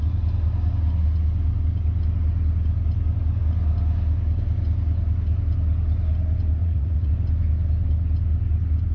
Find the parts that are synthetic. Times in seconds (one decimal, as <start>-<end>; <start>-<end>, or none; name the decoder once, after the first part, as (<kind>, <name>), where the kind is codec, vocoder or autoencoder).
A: 6.6-7.1 (vocoder, Vocos)